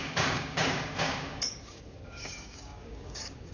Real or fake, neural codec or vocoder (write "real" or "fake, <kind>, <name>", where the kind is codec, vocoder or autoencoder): fake, codec, DAC